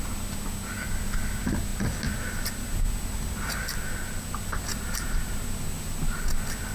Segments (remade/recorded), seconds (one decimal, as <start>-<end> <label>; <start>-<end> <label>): 0.0-6.7 recorded